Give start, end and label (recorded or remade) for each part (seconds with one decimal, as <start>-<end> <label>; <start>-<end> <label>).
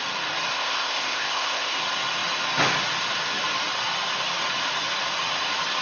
0.0-0.5 recorded; 0.5-1.8 remade; 1.8-5.8 recorded